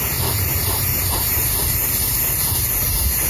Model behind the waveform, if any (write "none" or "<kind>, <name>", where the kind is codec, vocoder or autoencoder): vocoder, BigVGAN v2